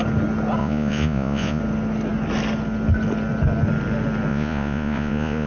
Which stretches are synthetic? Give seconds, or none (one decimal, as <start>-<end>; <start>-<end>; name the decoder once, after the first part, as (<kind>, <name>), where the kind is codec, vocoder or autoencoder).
0.6-1.6 (vocoder, Vocos); 4.3-5.5